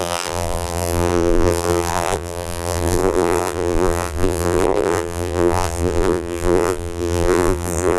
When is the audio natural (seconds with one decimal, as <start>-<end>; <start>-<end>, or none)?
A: none